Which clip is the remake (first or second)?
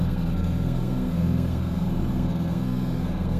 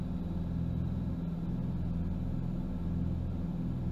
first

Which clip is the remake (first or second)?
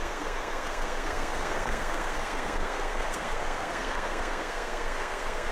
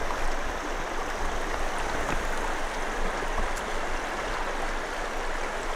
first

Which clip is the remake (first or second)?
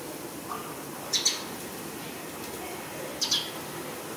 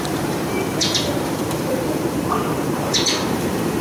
second